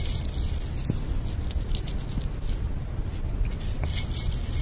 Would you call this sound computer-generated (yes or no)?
no